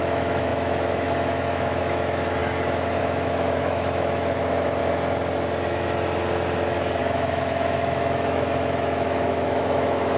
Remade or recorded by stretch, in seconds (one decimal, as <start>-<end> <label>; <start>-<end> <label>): 0.0-2.4 remade; 2.4-3.0 recorded; 3.0-4.8 remade; 4.8-7.0 recorded; 7.0-10.2 remade